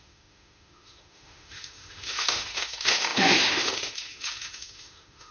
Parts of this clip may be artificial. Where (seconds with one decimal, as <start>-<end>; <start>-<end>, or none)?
0.0-5.3